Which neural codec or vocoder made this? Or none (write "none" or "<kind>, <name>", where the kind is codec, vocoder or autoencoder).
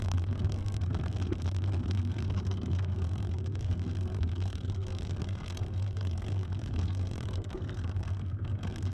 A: codec, SNAC